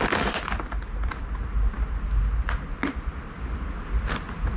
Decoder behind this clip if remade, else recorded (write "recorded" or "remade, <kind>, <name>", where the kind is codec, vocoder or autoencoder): recorded